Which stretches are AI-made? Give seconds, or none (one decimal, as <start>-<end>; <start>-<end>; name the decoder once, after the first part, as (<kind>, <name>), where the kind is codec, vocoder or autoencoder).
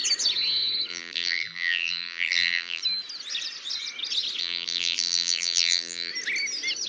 0.9-2.8 (vocoder, BigVGAN v2); 4.4-6.1